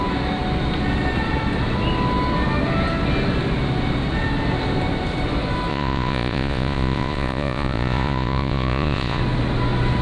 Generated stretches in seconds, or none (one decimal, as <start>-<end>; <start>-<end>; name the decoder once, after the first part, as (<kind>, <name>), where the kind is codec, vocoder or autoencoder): 5.7-9.2 (vocoder, Vocos)